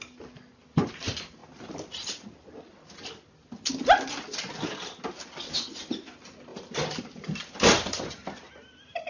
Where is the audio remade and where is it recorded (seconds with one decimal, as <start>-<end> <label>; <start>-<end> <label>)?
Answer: 0.0-9.1 recorded